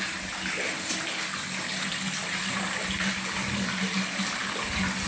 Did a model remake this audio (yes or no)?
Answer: no